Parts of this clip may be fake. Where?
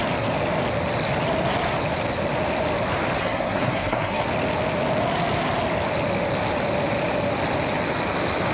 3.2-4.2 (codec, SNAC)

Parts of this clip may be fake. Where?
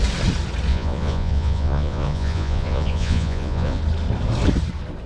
0.7-3.8 (vocoder, Vocos)